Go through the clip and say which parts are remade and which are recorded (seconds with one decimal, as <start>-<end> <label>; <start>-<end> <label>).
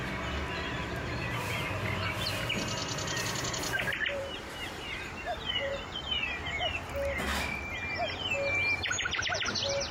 0.0-0.8 recorded; 0.8-1.6 remade; 1.6-2.8 recorded; 2.8-5.7 remade; 5.7-9.9 recorded